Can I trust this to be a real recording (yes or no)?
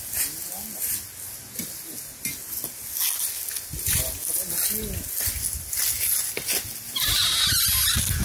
yes